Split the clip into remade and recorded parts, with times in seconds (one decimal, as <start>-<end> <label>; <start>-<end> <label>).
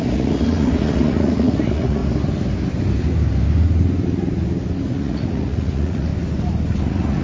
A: 0.0-2.0 remade; 2.0-4.9 recorded; 4.9-6.1 remade; 6.1-6.8 recorded; 6.8-7.2 remade